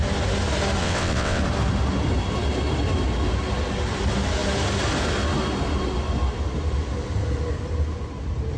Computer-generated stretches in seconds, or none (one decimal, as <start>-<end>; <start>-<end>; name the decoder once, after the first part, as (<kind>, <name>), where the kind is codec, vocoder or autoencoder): 0.8-1.4 (vocoder, WaveNeXt)